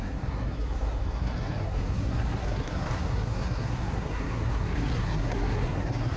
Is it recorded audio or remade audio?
remade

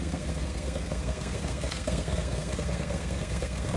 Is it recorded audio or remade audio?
remade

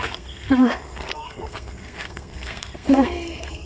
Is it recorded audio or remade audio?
remade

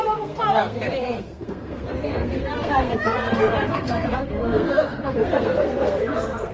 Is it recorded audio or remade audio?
remade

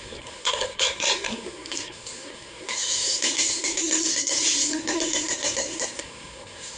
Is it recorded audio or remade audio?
remade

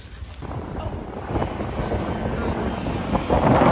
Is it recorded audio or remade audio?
recorded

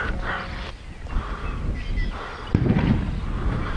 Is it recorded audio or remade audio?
recorded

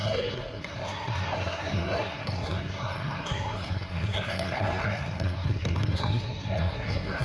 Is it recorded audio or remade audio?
remade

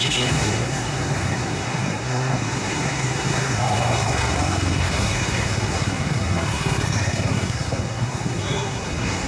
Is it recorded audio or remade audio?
remade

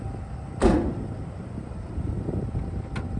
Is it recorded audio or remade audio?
recorded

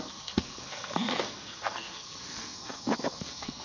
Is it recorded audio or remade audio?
remade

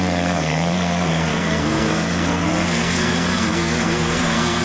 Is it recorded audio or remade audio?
remade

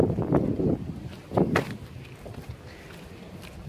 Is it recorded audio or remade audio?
recorded